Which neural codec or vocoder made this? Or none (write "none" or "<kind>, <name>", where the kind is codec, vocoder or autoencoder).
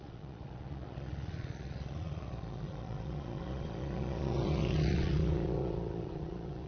vocoder, Vocos